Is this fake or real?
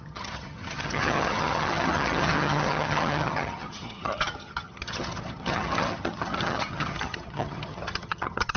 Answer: fake